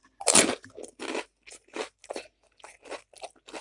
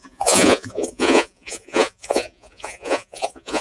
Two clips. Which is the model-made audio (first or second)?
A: second